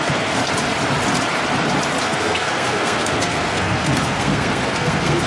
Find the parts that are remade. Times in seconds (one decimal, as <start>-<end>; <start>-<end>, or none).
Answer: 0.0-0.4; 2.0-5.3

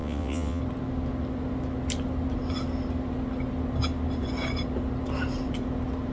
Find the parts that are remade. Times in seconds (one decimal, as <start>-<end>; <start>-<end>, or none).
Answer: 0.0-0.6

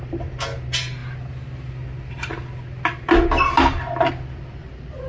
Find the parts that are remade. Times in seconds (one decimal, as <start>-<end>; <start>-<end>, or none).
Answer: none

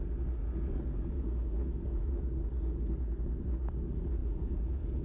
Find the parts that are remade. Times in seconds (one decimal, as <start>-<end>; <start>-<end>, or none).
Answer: 1.9-2.4; 4.2-5.0